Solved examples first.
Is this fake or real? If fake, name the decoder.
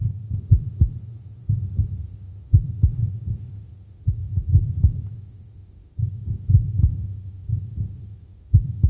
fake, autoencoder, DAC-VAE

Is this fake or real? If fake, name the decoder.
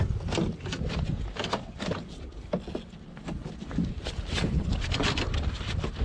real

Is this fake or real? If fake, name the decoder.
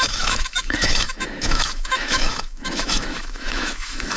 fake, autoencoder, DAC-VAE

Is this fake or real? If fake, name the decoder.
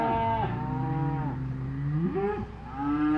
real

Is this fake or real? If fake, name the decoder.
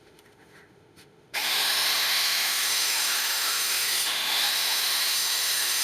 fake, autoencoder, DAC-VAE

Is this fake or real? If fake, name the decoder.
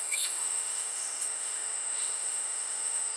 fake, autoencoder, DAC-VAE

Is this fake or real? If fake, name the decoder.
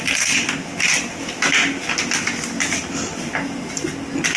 real